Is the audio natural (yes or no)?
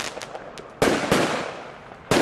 yes